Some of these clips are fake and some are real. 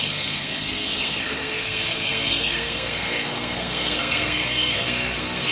fake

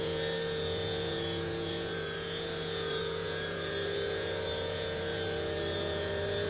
fake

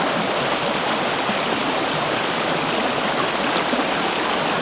real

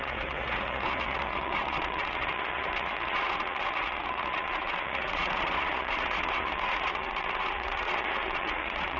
fake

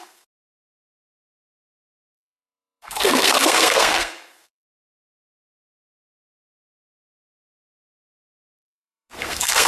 fake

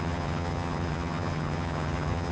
fake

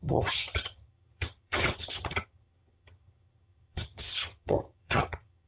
fake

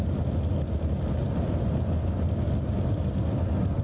real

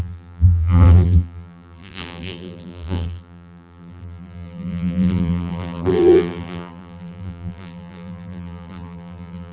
fake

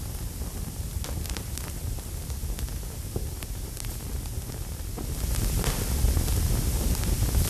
real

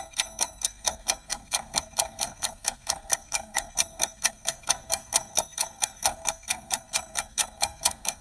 fake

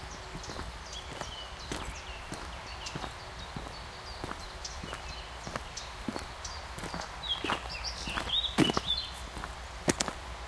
real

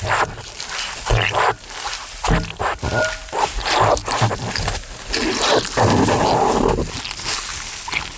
real